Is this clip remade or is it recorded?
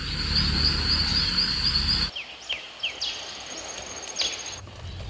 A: recorded